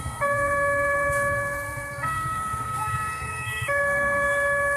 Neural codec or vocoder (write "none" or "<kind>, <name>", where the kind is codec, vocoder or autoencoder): codec, SNAC